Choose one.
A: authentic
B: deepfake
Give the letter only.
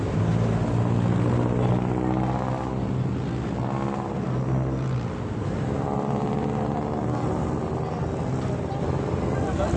A